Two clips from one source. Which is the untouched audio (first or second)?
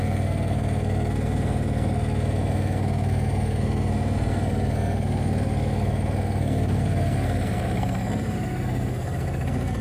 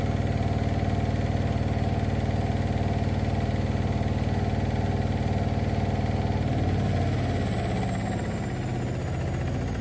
second